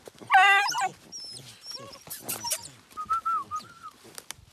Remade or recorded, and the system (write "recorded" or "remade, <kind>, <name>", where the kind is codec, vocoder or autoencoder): recorded